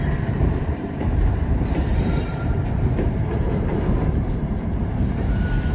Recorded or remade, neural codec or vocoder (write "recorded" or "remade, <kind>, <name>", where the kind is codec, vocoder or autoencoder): remade, vocoder, BigVGAN v2